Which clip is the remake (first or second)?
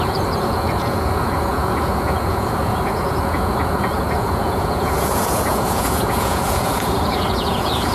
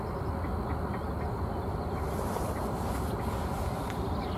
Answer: first